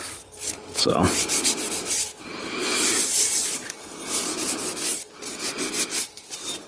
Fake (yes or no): no